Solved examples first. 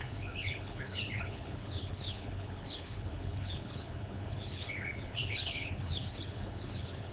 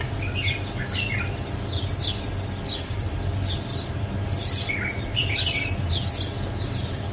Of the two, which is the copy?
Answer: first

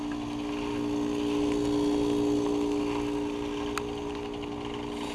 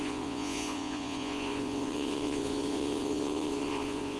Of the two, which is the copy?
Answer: second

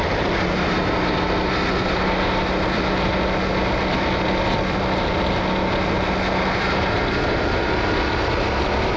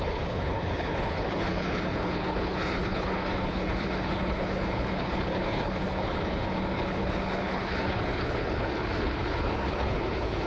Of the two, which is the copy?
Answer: second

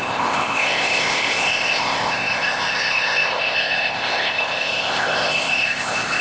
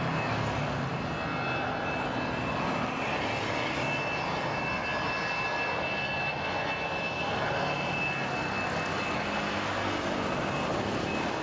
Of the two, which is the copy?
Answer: first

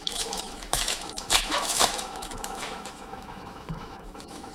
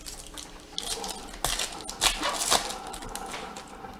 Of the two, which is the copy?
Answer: first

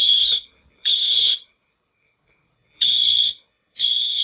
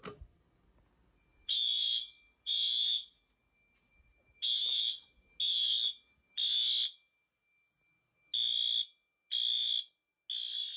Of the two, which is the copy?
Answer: first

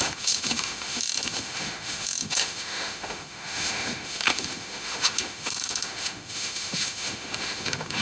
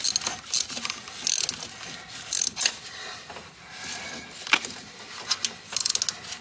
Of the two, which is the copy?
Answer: first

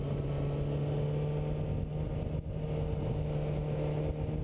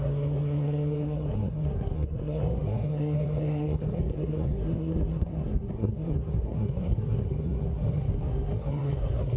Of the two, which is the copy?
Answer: second